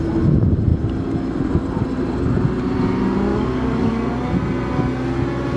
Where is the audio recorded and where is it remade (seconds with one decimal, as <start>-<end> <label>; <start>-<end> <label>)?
0.0-3.3 recorded; 3.3-3.9 remade; 3.9-5.6 recorded